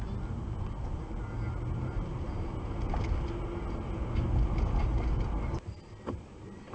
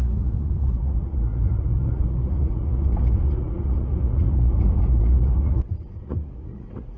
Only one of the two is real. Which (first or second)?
first